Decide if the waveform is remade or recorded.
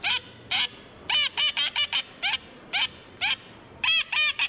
recorded